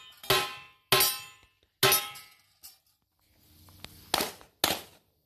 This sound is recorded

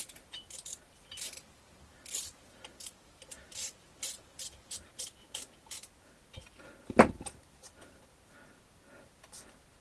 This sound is recorded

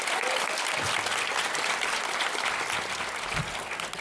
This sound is recorded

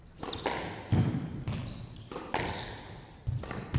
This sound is recorded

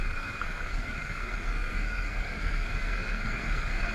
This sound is remade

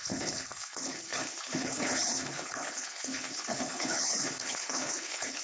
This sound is remade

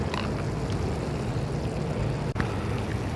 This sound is recorded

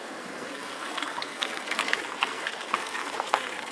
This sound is remade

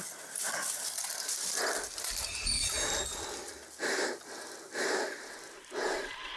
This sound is recorded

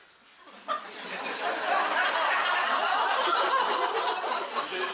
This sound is recorded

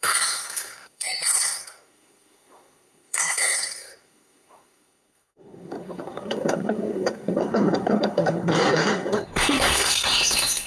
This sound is remade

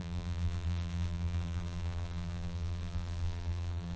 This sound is remade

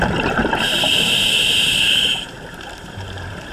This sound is remade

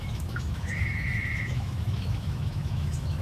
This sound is remade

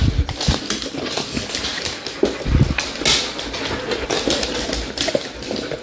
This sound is recorded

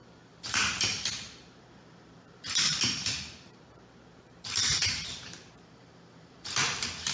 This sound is remade